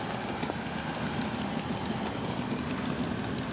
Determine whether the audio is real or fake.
real